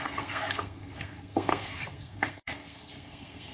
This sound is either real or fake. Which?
fake